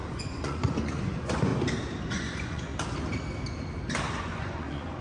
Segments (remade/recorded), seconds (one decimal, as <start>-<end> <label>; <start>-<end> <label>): 0.0-1.5 remade; 1.5-2.1 recorded; 2.1-2.7 remade; 2.7-4.2 recorded; 4.2-5.0 remade